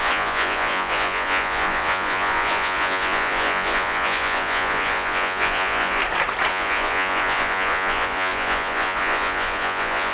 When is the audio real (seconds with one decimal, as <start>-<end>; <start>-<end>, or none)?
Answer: 6.0-6.5